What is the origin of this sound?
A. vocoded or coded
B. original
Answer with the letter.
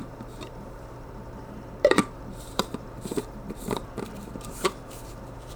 A